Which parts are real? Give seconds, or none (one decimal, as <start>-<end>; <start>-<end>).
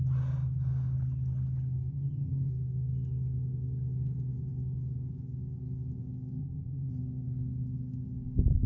0.0-1.9; 2.5-6.4; 6.9-8.7